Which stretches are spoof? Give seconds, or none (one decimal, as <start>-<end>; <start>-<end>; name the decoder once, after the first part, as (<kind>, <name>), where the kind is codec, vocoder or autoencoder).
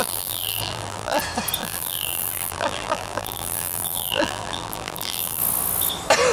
0.0-1.2 (vocoder, BigVGAN v2); 1.6-5.4